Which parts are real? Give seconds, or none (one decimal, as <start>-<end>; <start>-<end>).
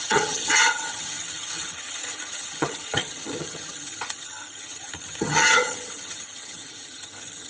none